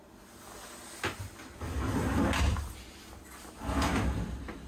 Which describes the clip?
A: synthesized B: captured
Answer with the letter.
B